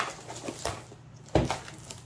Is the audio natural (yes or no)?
yes